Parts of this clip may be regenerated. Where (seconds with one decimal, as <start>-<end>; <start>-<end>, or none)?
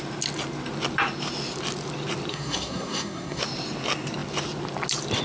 2.3-3.4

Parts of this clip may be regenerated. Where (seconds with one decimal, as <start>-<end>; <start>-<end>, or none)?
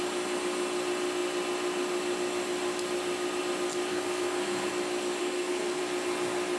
3.9-4.7; 5.2-5.8